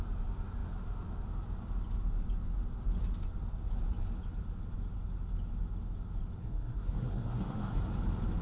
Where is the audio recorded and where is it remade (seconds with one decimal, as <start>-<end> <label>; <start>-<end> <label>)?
0.0-6.4 recorded; 6.4-7.8 remade; 7.8-8.4 recorded